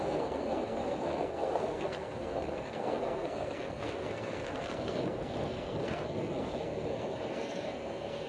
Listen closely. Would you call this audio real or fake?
fake